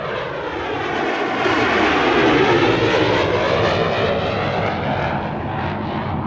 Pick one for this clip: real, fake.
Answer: real